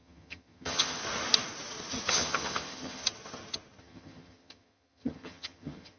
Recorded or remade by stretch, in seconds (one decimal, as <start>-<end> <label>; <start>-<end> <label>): 0.0-1.0 remade; 1.0-2.1 recorded; 2.1-3.0 remade; 3.0-3.8 recorded; 3.8-6.0 remade

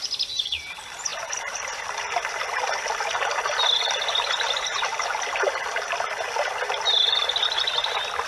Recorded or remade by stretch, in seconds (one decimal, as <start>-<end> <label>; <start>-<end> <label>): 0.0-8.3 recorded

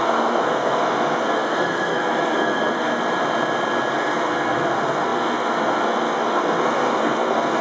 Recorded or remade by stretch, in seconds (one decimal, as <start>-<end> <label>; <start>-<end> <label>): 0.0-2.9 remade; 2.9-3.9 recorded; 3.9-7.6 remade

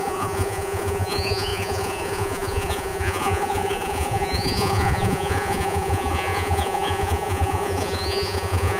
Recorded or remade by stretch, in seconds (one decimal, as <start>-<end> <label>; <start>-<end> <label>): 0.0-8.8 remade

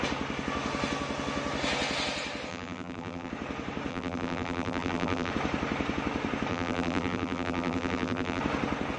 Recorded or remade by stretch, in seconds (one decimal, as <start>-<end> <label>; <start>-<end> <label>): 0.0-2.5 recorded; 2.5-3.3 remade; 3.3-3.9 recorded; 3.9-5.3 remade; 5.3-6.5 recorded; 6.5-8.4 remade; 8.4-9.0 recorded

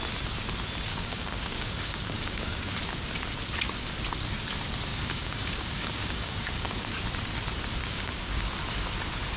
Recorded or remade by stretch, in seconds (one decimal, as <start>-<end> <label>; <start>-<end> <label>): 0.0-0.9 recorded; 0.9-2.8 remade; 2.8-4.9 recorded; 4.9-6.7 remade; 6.7-7.8 recorded; 7.8-8.5 remade; 8.5-9.4 recorded

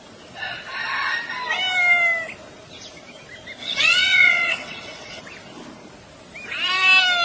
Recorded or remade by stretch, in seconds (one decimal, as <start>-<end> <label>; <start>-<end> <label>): 0.0-3.6 recorded; 3.6-5.2 remade; 5.2-7.2 recorded